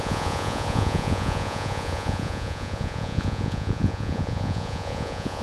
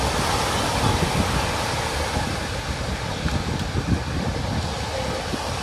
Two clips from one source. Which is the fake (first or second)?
first